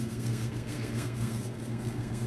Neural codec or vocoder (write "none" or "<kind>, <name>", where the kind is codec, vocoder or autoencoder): codec, SNAC